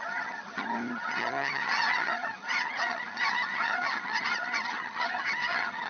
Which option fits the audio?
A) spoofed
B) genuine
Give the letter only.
A